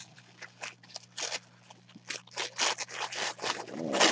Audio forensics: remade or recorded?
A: recorded